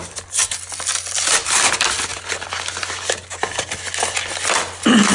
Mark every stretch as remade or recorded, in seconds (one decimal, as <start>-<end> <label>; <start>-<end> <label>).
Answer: 0.0-3.2 recorded; 3.2-3.8 remade; 3.8-5.1 recorded